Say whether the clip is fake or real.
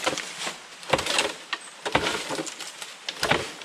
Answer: fake